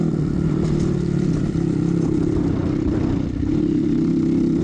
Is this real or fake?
fake